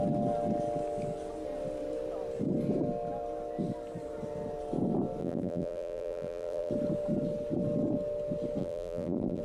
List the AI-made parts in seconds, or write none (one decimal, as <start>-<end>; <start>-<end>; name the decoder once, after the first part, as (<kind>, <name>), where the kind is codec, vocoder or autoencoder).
5.2-6.7 (vocoder, BigVGAN v2); 8.6-9.4